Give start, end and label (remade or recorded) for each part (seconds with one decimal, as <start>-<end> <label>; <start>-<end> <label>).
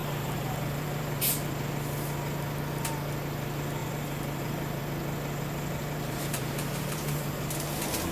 0.0-1.5 remade; 1.5-3.8 recorded; 3.8-4.8 remade; 4.8-5.8 recorded; 5.8-7.5 remade; 7.5-8.1 recorded